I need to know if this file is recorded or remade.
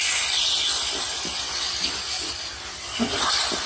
recorded